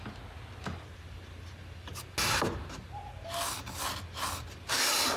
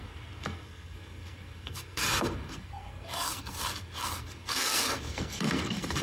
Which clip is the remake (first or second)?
second